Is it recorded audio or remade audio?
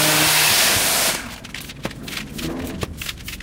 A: recorded